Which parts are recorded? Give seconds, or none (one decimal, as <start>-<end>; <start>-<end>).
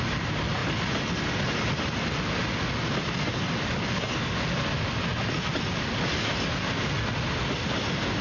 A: 0.0-8.2